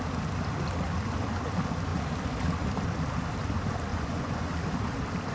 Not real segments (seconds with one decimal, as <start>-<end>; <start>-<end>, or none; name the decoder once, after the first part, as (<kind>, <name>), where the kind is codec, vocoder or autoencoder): 3.9-4.5 (vocoder, Vocos)